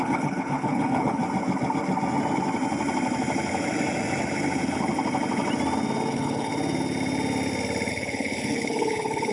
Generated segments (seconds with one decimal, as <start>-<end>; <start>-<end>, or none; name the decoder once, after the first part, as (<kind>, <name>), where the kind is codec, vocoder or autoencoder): 0.0-1.2 (codec, HILCodec); 6.1-6.5; 7.9-9.3